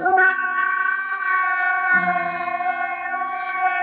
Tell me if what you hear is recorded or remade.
remade